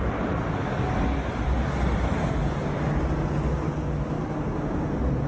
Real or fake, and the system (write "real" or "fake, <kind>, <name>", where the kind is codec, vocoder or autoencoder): real